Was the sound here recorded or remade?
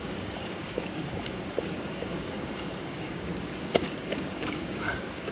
remade